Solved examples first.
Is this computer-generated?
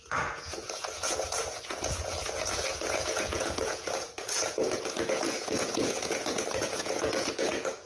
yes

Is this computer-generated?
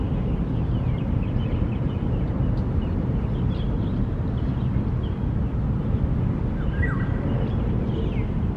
no